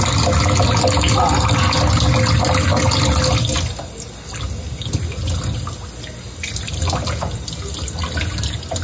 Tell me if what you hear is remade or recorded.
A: recorded